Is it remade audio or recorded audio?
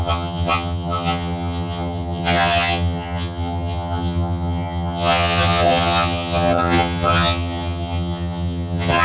remade